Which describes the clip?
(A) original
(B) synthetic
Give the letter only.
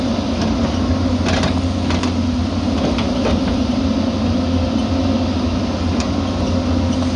A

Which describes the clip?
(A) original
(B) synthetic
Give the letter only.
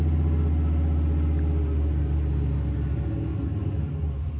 A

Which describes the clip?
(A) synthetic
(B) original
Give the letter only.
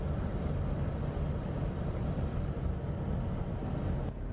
B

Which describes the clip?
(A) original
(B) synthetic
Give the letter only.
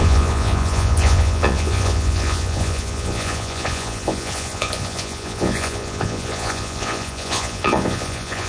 B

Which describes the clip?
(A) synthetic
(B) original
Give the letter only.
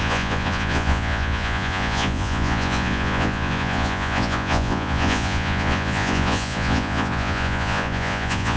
A